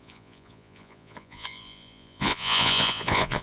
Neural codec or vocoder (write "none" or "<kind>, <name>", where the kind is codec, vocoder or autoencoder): vocoder, Vocos